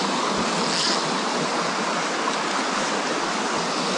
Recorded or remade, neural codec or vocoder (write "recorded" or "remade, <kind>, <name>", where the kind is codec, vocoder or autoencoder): recorded